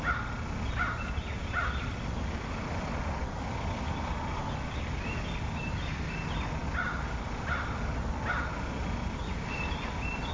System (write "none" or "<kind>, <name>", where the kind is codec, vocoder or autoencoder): none